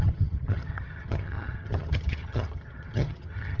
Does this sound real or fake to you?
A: fake